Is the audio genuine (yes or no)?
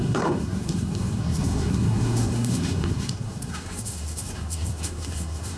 no